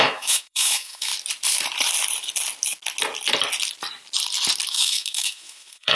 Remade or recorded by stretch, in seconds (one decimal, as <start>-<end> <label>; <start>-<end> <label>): 0.0-1.1 remade; 1.1-4.7 recorded; 4.7-6.0 remade